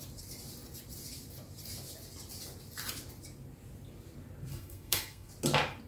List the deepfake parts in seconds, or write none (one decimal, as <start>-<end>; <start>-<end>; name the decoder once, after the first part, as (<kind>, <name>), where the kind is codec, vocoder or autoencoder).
4.5-5.3 (codec, SNAC)